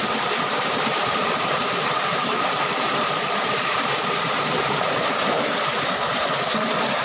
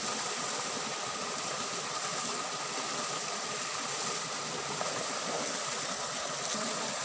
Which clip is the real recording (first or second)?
second